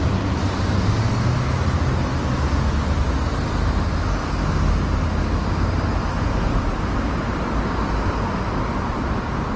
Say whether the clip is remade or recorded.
recorded